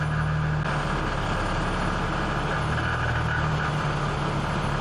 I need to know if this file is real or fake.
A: real